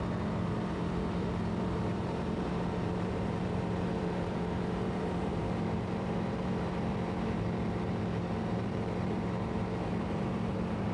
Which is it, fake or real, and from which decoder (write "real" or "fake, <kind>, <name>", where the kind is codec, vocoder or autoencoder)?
fake, vocoder, BigVGAN v2